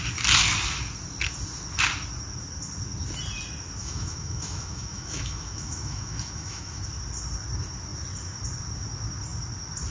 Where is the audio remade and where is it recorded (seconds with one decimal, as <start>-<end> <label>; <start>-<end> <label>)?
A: 0.0-3.8 recorded; 3.8-6.8 remade; 6.8-9.9 recorded